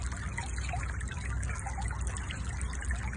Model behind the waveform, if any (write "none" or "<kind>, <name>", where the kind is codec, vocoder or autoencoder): none